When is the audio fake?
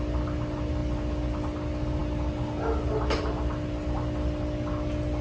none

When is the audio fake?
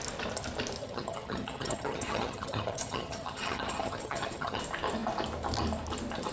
0.8-4.6